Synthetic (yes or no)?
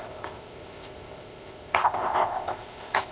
yes